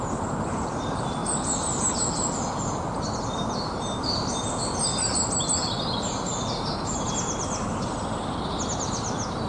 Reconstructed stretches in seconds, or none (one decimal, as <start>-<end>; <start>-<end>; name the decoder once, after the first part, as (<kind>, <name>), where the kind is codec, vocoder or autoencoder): none